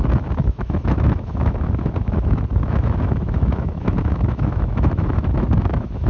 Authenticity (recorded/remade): remade